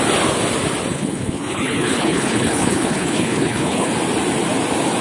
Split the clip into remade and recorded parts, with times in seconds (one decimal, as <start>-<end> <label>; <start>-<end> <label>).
0.0-0.9 recorded; 0.9-3.9 remade; 3.9-5.0 recorded